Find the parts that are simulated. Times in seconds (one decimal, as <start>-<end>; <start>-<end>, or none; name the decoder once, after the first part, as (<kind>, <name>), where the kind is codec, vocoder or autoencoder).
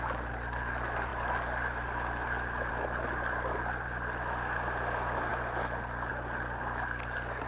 none